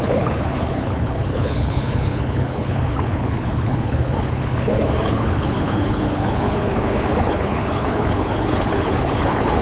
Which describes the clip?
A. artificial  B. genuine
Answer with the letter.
A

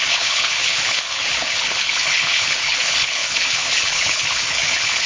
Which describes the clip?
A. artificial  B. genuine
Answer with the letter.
A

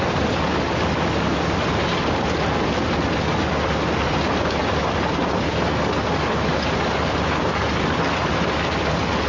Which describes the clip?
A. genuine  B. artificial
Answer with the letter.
A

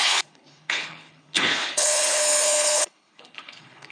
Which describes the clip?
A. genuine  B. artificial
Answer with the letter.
B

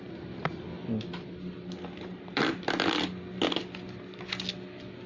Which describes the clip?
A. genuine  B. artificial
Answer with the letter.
A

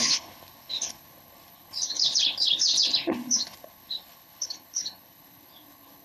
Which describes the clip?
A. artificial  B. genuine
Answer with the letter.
A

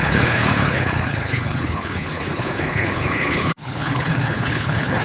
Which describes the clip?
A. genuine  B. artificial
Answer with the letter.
B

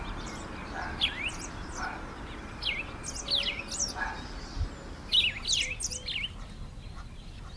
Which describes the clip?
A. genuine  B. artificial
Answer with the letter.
A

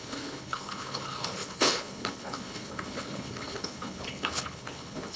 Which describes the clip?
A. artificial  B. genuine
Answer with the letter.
A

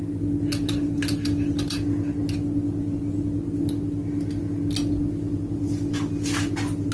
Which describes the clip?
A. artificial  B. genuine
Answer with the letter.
B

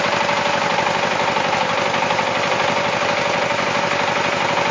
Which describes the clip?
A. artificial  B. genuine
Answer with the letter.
B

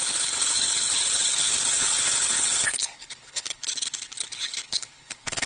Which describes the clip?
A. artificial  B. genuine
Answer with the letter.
A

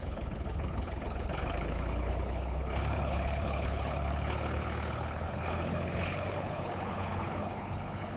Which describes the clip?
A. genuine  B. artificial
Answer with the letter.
B